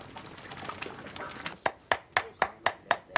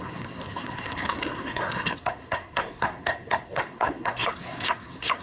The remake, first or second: second